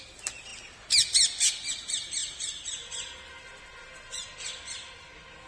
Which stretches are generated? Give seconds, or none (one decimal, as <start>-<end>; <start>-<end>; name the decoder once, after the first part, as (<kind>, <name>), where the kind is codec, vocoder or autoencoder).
none